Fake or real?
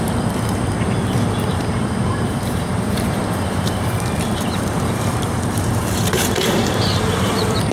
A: fake